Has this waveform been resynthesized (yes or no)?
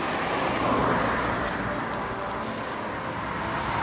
no